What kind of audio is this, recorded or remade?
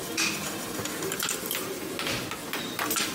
recorded